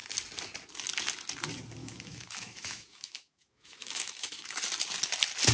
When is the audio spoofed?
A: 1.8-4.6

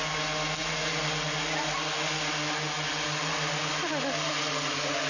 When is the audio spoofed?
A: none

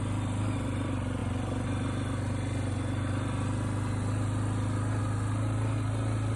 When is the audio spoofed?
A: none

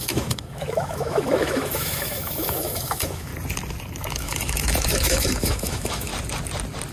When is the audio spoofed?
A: 0.0-3.3; 4.1-6.1